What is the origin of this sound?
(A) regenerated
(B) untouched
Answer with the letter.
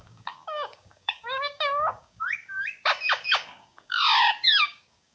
A